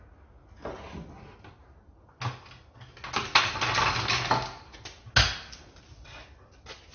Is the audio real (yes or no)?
yes